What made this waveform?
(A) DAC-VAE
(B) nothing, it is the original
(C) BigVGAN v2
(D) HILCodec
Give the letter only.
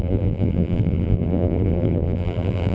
C